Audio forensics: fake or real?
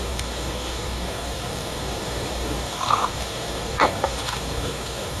fake